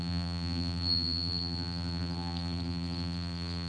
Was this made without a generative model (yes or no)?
no